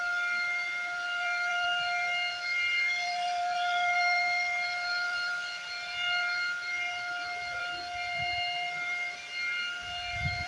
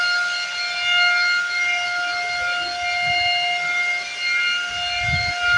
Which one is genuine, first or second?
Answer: second